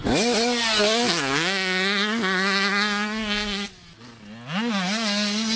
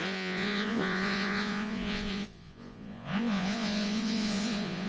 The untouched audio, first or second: first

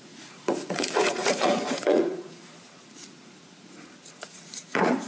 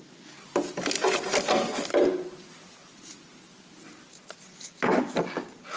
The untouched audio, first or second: second